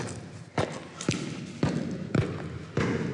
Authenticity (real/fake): real